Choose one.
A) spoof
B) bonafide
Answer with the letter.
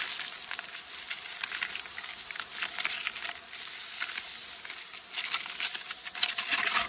B